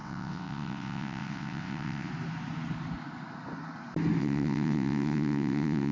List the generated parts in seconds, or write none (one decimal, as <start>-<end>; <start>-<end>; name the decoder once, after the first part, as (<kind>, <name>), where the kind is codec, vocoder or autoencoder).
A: 0.0-2.1 (vocoder, WaveNeXt); 4.2-5.9